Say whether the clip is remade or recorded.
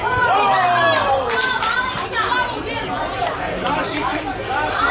recorded